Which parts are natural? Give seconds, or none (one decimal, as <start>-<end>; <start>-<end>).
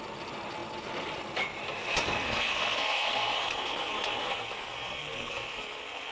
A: 0.0-2.2